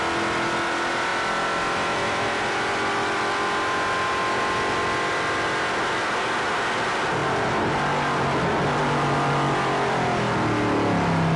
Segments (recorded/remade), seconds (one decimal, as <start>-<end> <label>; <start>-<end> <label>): 0.0-1.1 recorded; 1.1-2.4 remade; 2.4-11.4 recorded